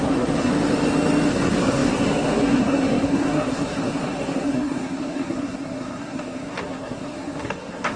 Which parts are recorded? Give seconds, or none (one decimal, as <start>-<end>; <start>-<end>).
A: 0.5-1.3